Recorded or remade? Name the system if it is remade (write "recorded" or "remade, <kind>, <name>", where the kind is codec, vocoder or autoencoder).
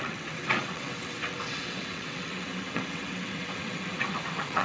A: remade, vocoder, WaveNeXt